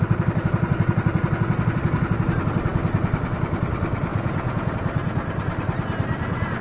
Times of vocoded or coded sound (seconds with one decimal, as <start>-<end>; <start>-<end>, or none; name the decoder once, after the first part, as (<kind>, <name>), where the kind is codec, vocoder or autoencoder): 4.1-4.7 (vocoder, Vocos)